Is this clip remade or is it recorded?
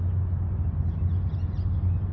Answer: recorded